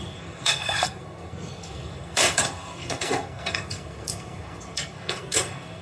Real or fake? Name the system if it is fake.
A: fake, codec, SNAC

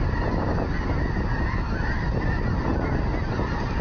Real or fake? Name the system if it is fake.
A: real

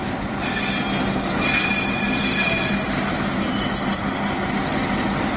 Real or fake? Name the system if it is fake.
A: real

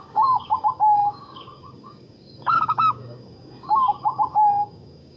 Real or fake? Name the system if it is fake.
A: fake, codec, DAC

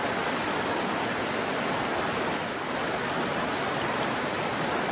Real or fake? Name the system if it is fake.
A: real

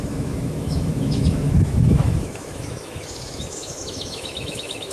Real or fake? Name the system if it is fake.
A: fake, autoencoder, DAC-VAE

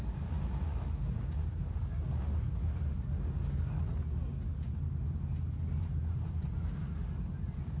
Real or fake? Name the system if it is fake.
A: real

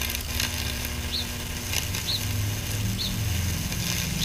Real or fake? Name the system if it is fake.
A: real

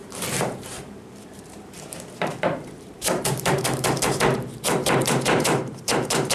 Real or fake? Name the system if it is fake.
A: fake, vocoder, BigVGAN v2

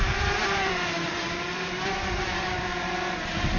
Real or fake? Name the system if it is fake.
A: fake, vocoder, BigVGAN v2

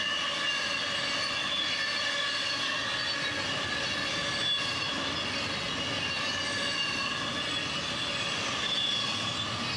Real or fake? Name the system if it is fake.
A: real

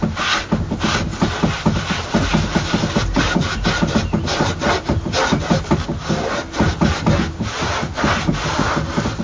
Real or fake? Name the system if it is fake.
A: real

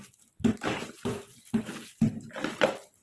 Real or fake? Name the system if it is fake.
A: real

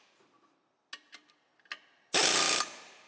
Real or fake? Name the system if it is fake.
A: real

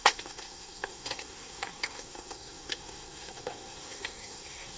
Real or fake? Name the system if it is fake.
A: fake, codec, SNAC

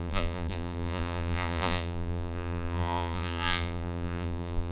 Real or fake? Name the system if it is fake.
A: fake, vocoder, BigVGAN v2